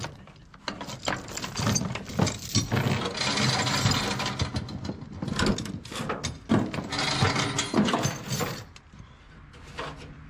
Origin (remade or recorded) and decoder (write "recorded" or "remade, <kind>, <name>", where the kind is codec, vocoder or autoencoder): recorded